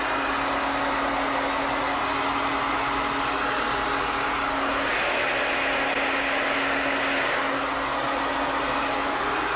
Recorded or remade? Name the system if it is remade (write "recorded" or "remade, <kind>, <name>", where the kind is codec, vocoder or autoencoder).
recorded